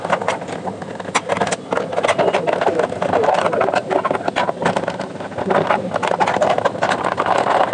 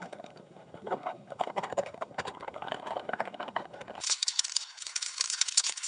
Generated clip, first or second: second